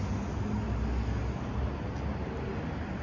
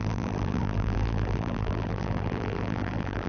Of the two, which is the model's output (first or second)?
second